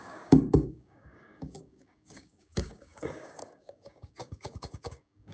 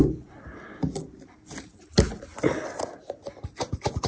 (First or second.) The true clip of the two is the second